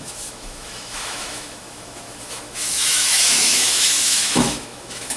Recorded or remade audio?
remade